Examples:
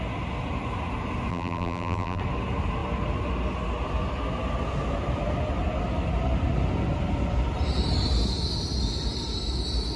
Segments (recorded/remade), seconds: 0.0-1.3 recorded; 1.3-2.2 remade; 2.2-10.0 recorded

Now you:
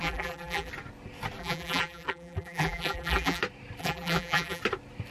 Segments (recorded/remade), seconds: 0.0-0.7 remade; 0.7-1.4 recorded; 1.4-3.4 remade; 3.4-3.8 recorded; 3.8-4.6 remade; 4.6-5.1 recorded

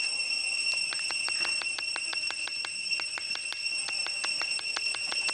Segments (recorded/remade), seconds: 0.0-0.6 recorded; 0.6-3.6 remade; 3.6-4.2 recorded; 4.2-5.3 remade

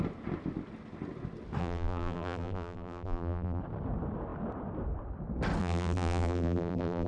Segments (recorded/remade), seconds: 0.0-1.6 recorded; 1.6-3.6 remade; 3.6-5.6 recorded; 5.6-7.1 remade

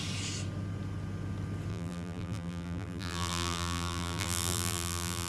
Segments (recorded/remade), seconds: 0.0-1.7 recorded; 1.7-5.3 remade

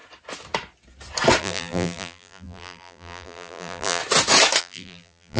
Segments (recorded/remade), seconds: 0.0-1.4 recorded; 1.4-4.0 remade; 4.0-4.6 recorded; 4.6-5.4 remade

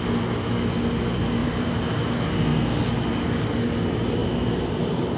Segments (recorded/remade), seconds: 0.0-1.4 recorded; 1.4-2.0 remade; 2.0-4.2 recorded; 4.2-5.2 remade